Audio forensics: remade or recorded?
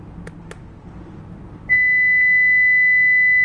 recorded